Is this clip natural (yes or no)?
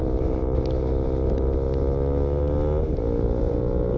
yes